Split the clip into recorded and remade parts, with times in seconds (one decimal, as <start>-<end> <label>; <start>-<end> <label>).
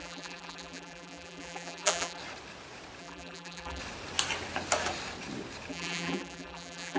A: 0.0-2.2 remade; 2.2-3.0 recorded; 3.0-3.8 remade; 3.8-5.7 recorded; 5.7-7.0 remade